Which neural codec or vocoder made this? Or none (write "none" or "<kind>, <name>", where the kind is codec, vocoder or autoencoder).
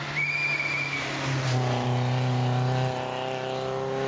none